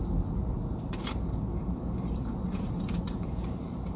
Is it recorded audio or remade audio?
remade